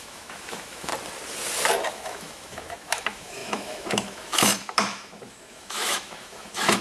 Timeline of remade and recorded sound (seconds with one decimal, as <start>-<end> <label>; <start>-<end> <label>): 0.0-0.9 remade; 0.9-1.9 recorded; 1.9-6.8 remade